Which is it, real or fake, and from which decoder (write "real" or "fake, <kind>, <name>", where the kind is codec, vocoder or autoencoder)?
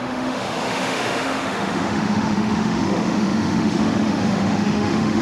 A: fake, autoencoder, DAC-VAE